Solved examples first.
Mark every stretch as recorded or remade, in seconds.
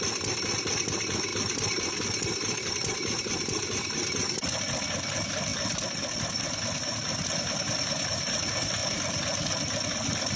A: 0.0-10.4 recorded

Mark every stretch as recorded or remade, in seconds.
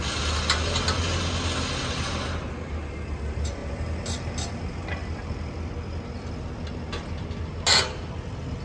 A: 0.0-3.6 recorded; 3.6-4.4 remade; 4.4-5.0 recorded; 5.0-5.7 remade; 5.7-8.6 recorded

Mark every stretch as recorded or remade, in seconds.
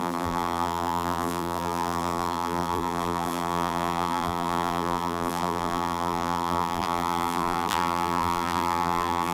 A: 0.0-9.3 remade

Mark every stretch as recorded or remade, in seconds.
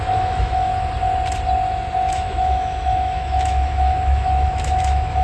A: 0.0-0.7 remade; 0.7-2.1 recorded; 2.1-5.2 remade